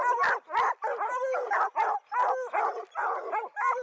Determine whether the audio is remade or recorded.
recorded